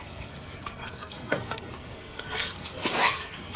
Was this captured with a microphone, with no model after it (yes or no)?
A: no